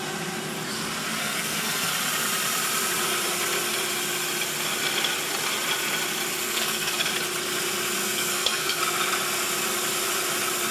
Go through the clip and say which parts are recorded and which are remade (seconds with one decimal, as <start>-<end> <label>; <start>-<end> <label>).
0.0-1.2 recorded; 1.2-1.9 remade; 1.9-6.4 recorded; 6.4-7.1 remade; 7.1-8.0 recorded; 8.0-8.8 remade; 8.8-10.7 recorded